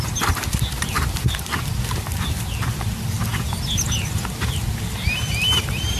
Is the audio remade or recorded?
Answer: recorded